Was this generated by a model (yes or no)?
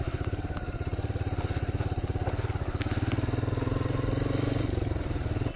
no